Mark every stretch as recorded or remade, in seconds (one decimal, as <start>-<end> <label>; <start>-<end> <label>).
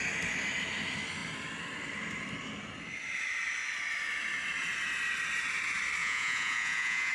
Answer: 0.0-6.0 recorded; 6.0-7.1 remade